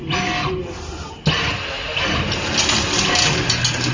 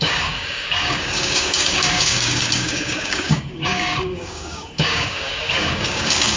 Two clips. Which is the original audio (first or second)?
first